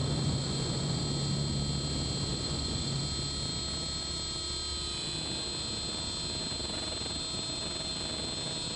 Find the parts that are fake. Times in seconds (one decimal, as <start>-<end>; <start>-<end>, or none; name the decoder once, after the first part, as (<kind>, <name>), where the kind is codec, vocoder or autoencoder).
0.0-1.0 (vocoder, Vocos); 2.3-3.0